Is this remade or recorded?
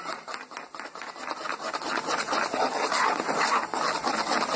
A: recorded